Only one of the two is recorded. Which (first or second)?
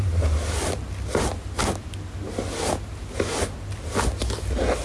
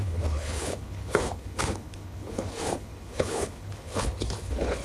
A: first